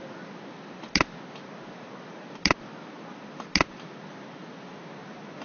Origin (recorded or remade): recorded